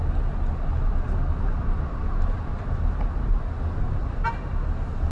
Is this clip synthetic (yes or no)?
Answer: no